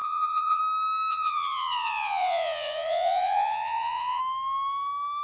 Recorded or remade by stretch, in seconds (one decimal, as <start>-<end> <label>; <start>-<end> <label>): 0.0-0.6 remade; 0.6-1.1 recorded; 1.1-4.2 remade; 4.2-5.2 recorded